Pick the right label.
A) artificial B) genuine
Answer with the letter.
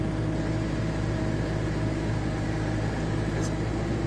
B